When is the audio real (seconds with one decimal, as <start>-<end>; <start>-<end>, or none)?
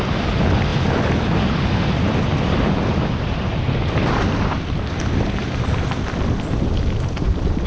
0.0-7.7